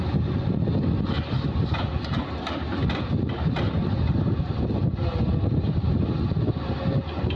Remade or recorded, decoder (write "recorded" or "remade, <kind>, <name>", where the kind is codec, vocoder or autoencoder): recorded